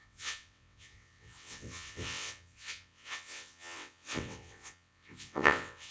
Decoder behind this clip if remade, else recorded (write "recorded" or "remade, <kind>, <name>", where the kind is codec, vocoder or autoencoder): remade, vocoder, WaveNeXt